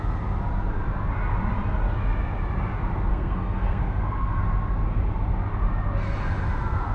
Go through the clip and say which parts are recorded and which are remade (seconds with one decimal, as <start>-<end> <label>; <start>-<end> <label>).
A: 0.0-3.1 recorded; 3.1-4.4 remade; 4.4-6.9 recorded

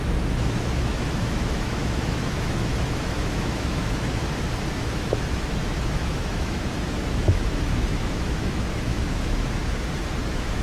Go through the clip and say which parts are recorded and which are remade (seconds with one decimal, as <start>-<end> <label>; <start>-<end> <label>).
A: 0.0-4.2 remade; 4.2-4.7 recorded; 4.7-9.6 remade; 9.6-10.2 recorded; 10.2-10.6 remade

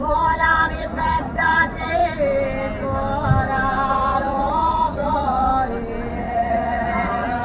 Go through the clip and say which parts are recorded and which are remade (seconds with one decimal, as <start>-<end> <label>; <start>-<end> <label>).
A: 0.0-2.0 remade; 2.0-3.9 recorded; 3.9-5.5 remade; 5.5-6.1 recorded; 6.1-7.4 remade

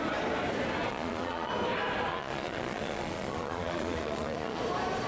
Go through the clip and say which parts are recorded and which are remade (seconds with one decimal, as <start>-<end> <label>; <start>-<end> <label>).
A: 0.0-0.9 recorded; 0.9-1.5 remade; 1.5-2.1 recorded; 2.1-4.6 remade; 4.6-5.1 recorded

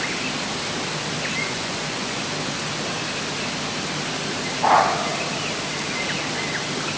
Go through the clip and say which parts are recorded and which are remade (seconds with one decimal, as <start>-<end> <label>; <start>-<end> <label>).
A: 0.0-1.4 recorded; 1.4-2.2 remade; 2.2-7.0 recorded

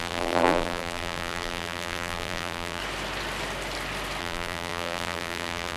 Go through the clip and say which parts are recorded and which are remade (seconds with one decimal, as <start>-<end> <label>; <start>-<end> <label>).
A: 0.0-2.8 remade; 2.8-4.2 recorded; 4.2-5.8 remade

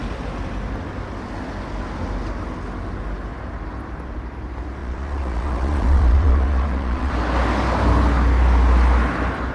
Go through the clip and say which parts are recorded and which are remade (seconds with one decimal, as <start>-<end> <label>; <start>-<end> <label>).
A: 0.0-4.8 recorded; 4.8-7.1 remade; 7.1-9.5 recorded

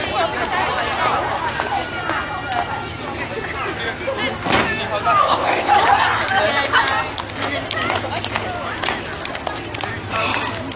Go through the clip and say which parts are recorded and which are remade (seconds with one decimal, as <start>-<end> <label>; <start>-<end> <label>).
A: 0.0-5.2 recorded; 5.2-5.7 remade; 5.7-10.8 recorded